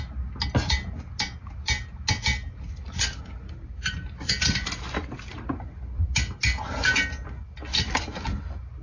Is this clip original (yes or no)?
yes